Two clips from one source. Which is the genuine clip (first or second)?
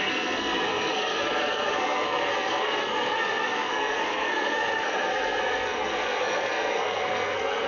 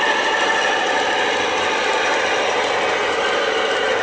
second